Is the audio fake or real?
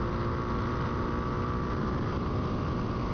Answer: real